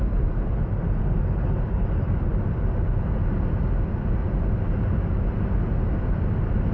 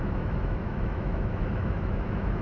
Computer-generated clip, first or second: second